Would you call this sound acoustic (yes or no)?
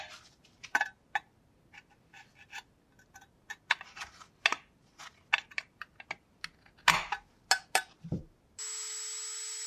yes